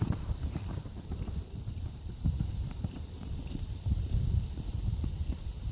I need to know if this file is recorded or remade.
remade